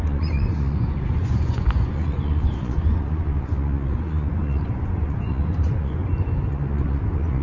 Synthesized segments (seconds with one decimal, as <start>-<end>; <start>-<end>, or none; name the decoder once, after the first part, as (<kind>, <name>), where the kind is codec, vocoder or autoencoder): 0.0-6.0 (vocoder, Vocos); 6.5-7.4